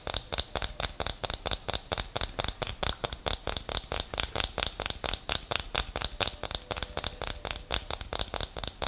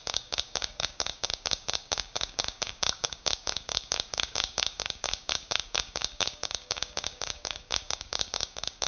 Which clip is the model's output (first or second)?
second